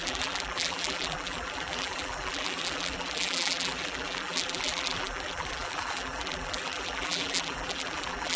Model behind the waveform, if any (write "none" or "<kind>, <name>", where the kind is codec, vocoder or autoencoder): vocoder, BigVGAN v2